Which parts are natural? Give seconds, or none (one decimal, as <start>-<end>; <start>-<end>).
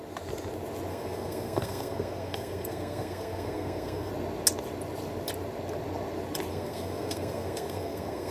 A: 0.0-0.9; 4.1-6.5